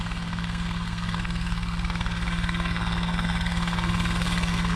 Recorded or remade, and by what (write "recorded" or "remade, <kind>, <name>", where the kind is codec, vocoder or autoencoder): remade, codec, SNAC